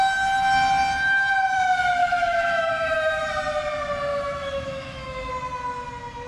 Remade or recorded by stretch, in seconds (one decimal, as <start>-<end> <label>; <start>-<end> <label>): 0.0-2.0 recorded; 2.0-3.3 remade; 3.3-4.1 recorded; 4.1-5.3 remade; 5.3-6.3 recorded